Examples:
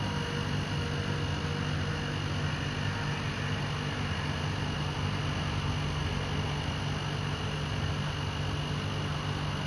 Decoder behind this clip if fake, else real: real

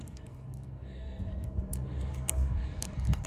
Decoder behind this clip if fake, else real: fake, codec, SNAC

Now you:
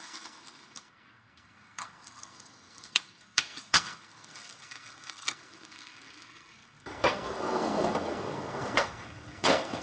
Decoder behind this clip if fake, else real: fake, codec, SNAC